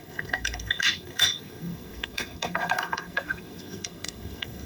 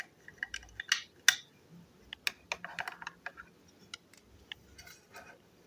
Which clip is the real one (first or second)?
second